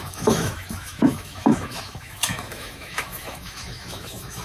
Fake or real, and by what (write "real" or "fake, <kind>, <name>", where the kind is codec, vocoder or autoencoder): fake, autoencoder, DAC-VAE